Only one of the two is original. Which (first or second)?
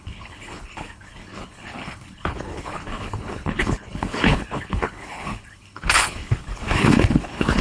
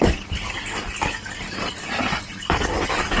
second